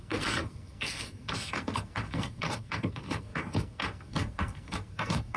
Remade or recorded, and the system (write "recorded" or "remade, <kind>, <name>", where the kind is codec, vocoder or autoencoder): remade, codec, SNAC